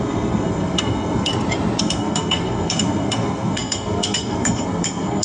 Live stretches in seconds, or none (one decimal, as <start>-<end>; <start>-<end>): 1.3-1.8